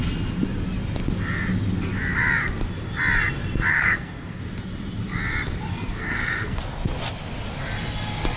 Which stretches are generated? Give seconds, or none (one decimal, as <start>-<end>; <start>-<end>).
3.7-4.4; 5.7-6.6